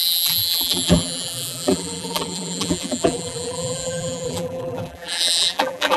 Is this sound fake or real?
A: fake